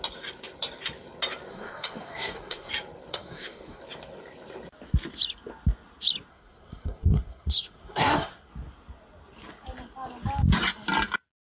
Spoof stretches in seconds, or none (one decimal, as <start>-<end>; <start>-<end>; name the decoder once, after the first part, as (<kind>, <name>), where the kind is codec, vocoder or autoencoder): 1.5-2.7 (codec, SNAC); 3.1-3.8; 6.3-8.5

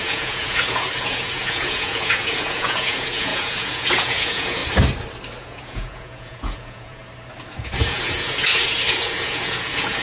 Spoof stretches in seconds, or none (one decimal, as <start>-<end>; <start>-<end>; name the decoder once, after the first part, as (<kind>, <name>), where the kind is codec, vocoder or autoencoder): 0.0-4.6 (vocoder, Vocos); 5.4-7.0; 7.6-10.0

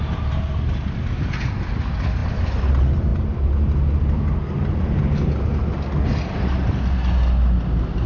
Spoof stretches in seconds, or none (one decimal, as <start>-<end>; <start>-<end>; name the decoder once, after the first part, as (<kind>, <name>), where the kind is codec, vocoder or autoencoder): none

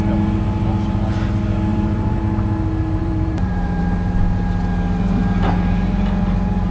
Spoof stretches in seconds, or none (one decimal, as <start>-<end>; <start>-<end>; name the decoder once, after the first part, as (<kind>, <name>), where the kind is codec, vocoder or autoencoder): 1.7-2.2 (vocoder, BigVGAN v2); 3.0-3.8

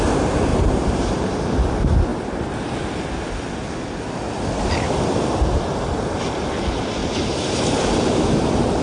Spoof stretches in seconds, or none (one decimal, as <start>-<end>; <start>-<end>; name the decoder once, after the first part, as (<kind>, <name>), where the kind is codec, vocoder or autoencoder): 0.5-1.7 (vocoder, BigVGAN v2); 7.0-7.8